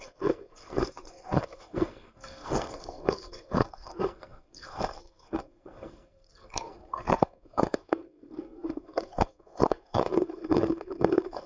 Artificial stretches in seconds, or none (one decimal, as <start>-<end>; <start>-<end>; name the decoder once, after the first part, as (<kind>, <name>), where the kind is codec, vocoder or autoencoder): 0.0-11.5 (codec, SNAC)